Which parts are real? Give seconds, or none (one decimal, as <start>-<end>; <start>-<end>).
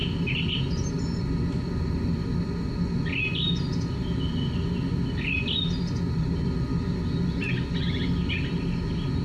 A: 0.0-9.2